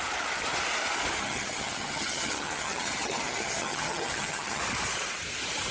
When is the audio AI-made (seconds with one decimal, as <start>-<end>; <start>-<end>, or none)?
1.2-4.6